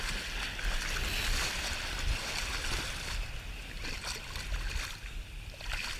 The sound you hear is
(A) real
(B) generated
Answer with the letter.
A